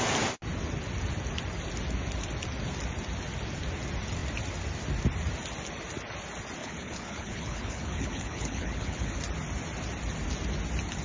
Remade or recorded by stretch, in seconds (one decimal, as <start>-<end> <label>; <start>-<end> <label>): 0.0-6.6 recorded; 6.6-9.1 remade; 9.1-11.0 recorded